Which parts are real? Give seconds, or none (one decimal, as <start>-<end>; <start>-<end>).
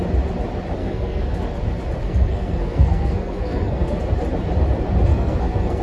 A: 0.0-0.8; 1.6-2.0; 4.0-5.1